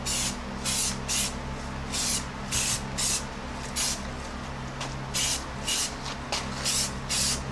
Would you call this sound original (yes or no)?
yes